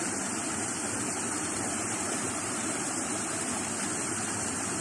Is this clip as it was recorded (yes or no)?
no